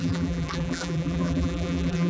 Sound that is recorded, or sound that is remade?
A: remade